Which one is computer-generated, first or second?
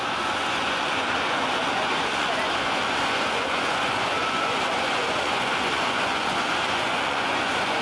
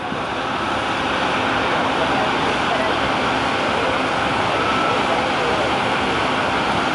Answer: first